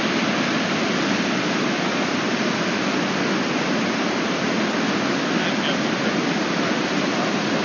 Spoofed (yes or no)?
no